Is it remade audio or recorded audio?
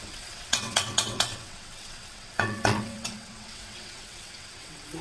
remade